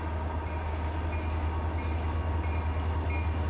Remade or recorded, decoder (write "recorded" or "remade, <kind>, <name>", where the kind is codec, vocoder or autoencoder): recorded